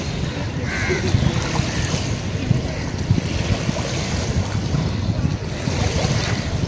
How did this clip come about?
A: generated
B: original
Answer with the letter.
B